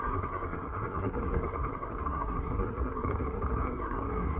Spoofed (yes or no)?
yes